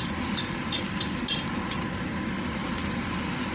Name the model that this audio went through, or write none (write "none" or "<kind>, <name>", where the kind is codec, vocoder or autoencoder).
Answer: none